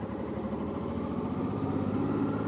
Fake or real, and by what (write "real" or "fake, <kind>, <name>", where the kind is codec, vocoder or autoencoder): real